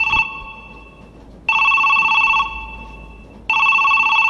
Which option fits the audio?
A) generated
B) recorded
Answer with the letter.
B